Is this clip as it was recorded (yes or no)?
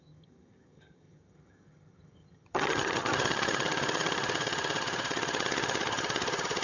no